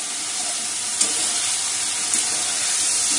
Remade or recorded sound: recorded